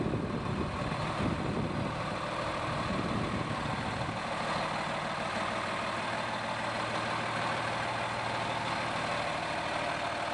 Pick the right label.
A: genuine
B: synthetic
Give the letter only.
A